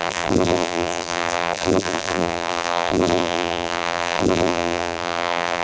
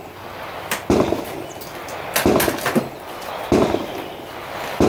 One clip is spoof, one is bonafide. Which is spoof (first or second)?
first